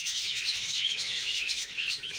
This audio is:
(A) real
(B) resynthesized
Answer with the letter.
B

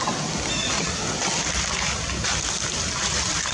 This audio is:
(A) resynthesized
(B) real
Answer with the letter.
B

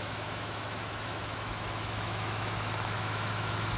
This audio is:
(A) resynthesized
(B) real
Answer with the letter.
A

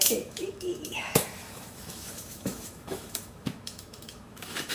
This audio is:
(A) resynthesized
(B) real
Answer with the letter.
A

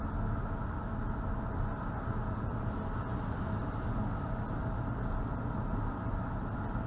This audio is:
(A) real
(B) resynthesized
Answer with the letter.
A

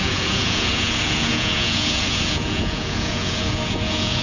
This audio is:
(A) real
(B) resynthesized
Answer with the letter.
B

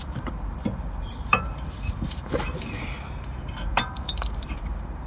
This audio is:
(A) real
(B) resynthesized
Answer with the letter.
B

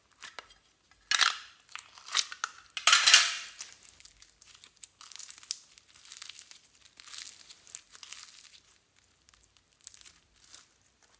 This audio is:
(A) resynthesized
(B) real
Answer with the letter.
B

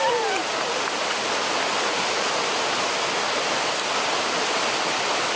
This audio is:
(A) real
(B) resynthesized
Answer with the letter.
A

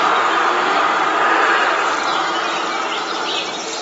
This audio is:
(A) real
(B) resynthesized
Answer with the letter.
A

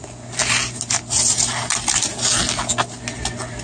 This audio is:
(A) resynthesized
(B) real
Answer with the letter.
B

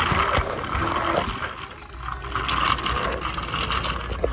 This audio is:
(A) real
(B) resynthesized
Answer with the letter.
A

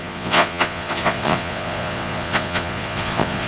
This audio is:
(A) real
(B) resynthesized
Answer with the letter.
B